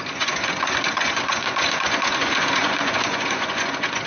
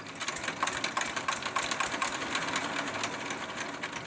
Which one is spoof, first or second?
first